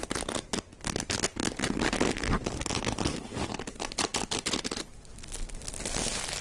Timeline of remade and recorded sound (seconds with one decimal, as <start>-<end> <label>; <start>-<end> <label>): 0.0-6.4 recorded